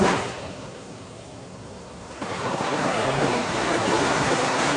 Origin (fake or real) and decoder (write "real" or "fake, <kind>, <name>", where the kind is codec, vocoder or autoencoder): fake, codec, SNAC